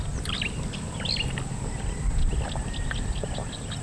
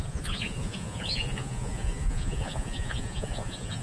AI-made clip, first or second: second